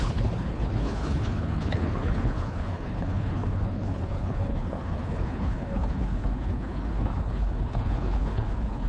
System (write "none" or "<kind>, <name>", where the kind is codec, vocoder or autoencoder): codec, HILCodec